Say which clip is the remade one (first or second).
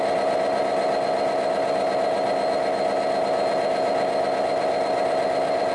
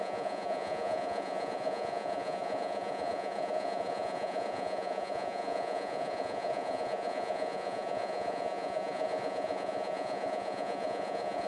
second